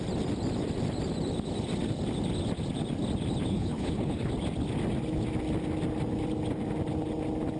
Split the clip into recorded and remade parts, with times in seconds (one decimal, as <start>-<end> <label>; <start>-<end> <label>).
0.0-3.5 recorded; 3.5-4.3 remade; 4.3-7.6 recorded